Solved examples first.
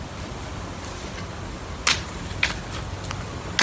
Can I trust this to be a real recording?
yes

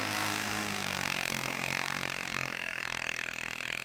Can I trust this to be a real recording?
no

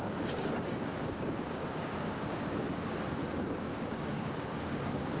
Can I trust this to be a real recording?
no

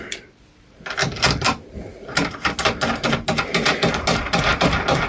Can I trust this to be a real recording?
yes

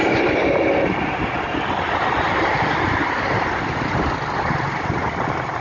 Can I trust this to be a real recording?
yes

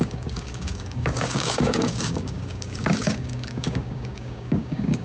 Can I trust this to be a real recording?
no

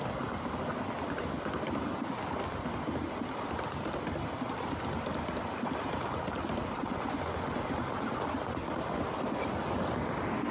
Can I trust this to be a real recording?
yes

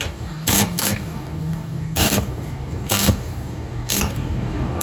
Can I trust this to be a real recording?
no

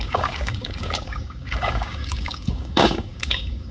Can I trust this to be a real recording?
no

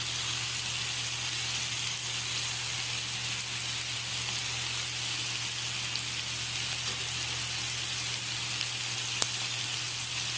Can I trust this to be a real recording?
yes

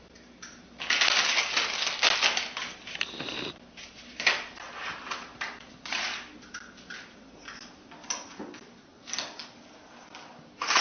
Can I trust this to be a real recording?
yes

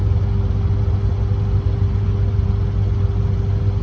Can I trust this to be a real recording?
yes